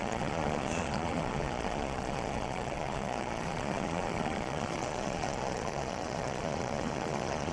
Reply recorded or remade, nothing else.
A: remade